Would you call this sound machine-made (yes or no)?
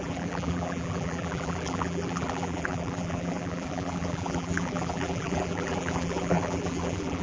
yes